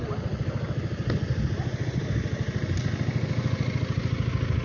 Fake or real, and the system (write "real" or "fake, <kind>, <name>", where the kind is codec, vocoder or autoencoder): real